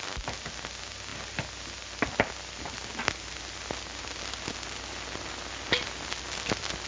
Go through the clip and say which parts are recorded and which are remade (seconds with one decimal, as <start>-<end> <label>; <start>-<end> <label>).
0.0-6.9 recorded